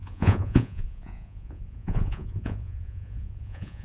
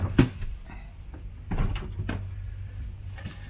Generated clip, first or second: first